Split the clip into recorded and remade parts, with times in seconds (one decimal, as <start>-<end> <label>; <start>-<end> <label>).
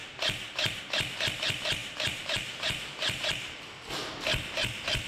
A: 0.0-0.8 remade; 0.8-1.8 recorded; 1.8-4.1 remade; 4.1-5.1 recorded